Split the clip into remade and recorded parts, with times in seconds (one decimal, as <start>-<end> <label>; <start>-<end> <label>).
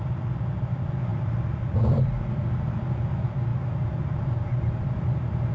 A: 0.0-1.1 recorded; 1.1-2.4 remade; 2.4-4.5 recorded; 4.5-5.5 remade